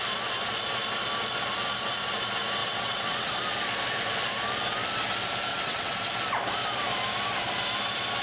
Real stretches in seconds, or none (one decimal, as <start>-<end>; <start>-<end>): 0.0-2.6; 3.3-5.5; 6.1-8.2